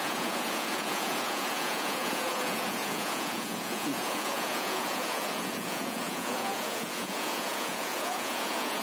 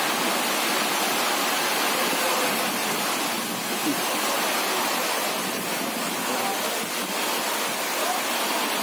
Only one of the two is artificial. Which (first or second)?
first